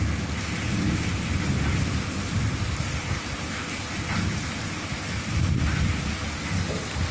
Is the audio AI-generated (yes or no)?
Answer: no